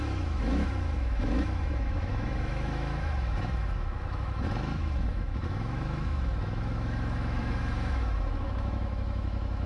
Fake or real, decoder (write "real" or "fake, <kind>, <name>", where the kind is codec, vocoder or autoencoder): fake, autoencoder, DAC-VAE